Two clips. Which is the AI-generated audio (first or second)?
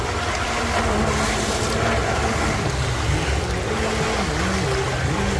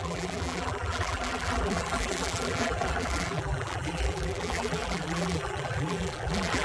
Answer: second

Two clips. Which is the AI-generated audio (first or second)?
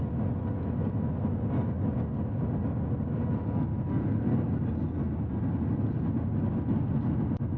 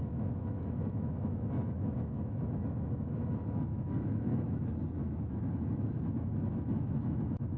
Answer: second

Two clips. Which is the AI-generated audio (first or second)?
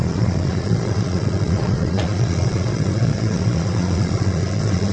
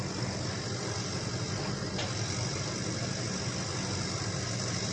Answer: first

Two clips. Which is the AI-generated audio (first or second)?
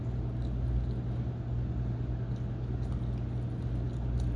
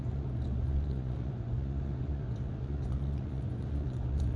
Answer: second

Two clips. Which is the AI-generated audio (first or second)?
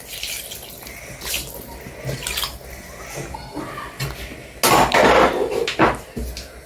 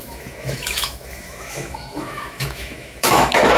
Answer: second